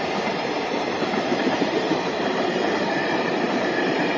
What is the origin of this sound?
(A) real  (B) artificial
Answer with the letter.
B